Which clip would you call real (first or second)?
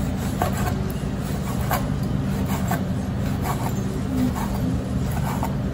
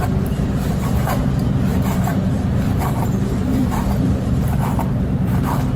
first